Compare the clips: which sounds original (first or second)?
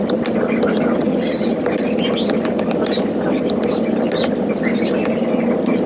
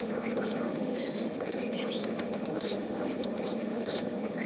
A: first